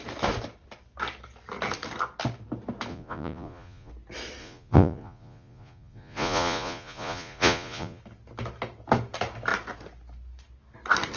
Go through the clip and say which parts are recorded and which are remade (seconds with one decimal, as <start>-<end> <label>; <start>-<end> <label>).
0.0-2.9 recorded; 2.9-3.9 remade; 3.9-4.4 recorded; 4.4-8.0 remade; 8.0-11.2 recorded